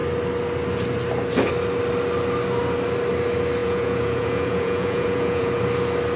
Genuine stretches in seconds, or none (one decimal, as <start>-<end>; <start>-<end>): 0.0-3.6; 5.6-6.2